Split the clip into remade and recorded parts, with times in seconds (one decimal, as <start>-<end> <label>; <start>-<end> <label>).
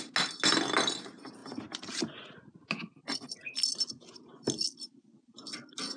0.0-6.0 recorded